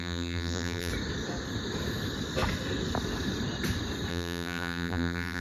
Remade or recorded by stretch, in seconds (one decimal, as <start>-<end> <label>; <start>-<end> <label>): 0.0-0.9 remade; 0.9-4.1 recorded; 4.1-5.4 remade